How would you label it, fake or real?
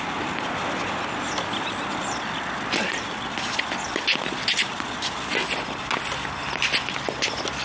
real